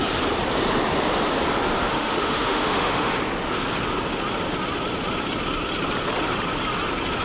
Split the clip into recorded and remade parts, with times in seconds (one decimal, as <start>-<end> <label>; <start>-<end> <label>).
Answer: 0.0-1.8 recorded; 1.8-3.1 remade; 3.1-7.2 recorded